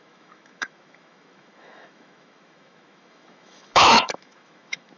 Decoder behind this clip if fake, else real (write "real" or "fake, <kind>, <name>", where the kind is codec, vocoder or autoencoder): fake, autoencoder, DAC-VAE